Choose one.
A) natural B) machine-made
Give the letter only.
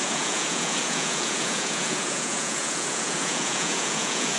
B